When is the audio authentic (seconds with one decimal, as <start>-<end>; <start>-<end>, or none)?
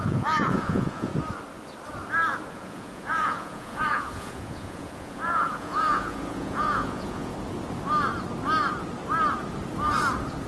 1.1-2.5; 7.3-10.5